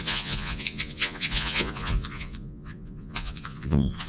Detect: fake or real fake